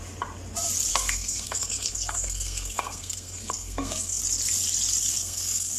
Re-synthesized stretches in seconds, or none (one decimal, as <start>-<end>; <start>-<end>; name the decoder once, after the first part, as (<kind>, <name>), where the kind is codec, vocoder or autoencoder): 0.9-4.2 (codec, SNAC); 5.0-5.8